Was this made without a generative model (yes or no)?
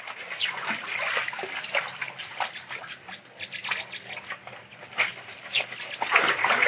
yes